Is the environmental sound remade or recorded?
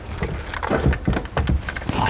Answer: recorded